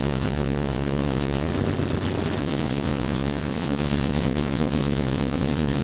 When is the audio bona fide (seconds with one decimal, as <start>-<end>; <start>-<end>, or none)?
1.5-2.4